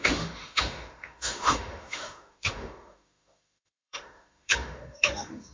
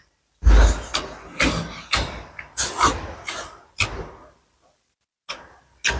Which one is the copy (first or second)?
first